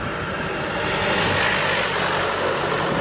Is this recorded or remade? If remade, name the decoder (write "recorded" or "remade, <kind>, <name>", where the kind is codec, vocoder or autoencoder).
recorded